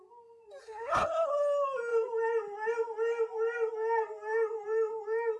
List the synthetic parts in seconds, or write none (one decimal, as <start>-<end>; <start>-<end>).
0.6-1.3